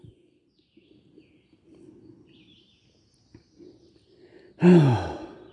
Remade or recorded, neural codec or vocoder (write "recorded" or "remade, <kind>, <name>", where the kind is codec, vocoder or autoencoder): recorded